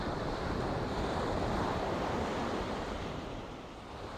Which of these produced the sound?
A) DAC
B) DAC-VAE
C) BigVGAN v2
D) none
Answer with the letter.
C